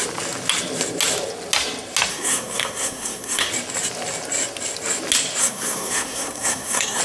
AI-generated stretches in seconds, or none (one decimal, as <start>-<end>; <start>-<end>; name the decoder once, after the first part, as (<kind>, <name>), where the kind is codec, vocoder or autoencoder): 2.1-3.5 (codec, SNAC); 5.4-7.0